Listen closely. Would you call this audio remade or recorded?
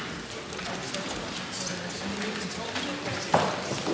recorded